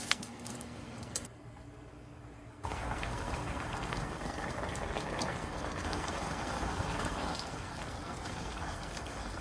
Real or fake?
fake